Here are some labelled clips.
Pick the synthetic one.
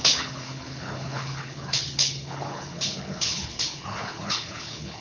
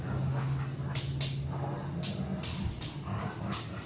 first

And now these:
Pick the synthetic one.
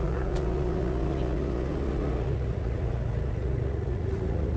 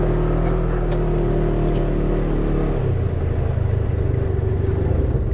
first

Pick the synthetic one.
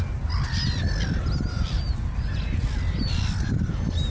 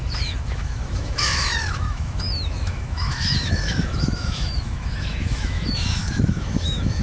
second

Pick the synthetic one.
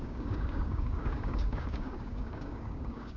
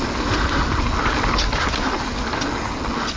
first